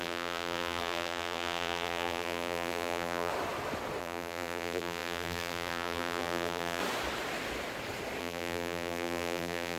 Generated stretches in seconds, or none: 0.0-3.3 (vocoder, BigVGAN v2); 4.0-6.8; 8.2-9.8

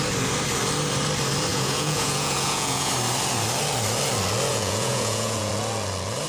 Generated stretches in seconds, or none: 1.5-2.9 (vocoder, Vocos); 4.5-5.5

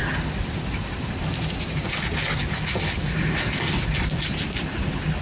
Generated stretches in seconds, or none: none

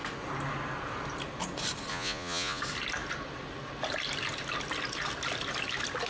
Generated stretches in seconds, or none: 1.9-2.6 (vocoder, Vocos)